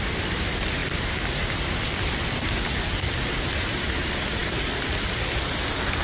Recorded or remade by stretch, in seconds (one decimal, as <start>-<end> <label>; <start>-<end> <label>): 0.0-6.0 remade